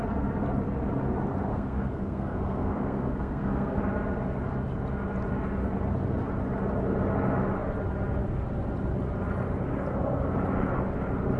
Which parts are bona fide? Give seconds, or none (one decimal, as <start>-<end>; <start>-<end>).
0.0-1.5; 3.8-11.4